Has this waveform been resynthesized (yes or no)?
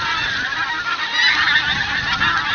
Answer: no